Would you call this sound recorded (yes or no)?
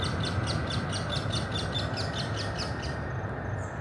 yes